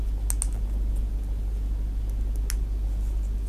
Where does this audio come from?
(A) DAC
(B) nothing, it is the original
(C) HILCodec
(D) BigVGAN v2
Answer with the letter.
B